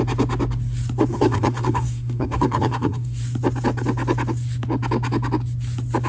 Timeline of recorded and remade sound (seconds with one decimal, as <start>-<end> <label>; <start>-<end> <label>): 0.0-1.1 recorded; 1.1-3.2 remade; 3.2-6.1 recorded